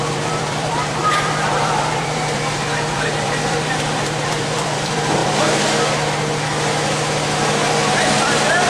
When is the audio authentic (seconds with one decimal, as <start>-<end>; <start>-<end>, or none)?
5.2-8.1